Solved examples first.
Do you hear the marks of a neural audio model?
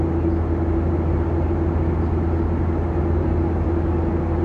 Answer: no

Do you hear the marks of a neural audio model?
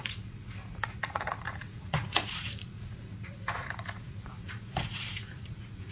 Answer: yes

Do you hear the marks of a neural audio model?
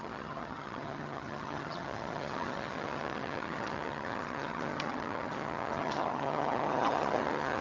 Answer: yes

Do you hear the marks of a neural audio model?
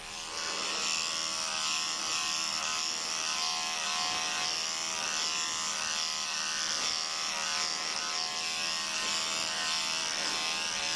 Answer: no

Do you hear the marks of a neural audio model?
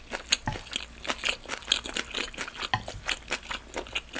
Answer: no